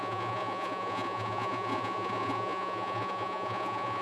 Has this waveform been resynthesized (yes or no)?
yes